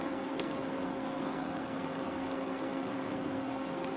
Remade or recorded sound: remade